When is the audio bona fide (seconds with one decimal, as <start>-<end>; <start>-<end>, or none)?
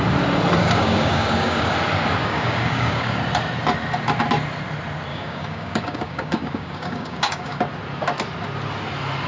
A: 0.0-0.6; 1.7-2.2; 3.2-5.1; 7.6-9.3